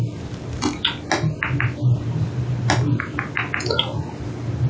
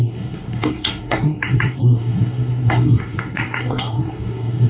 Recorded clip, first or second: first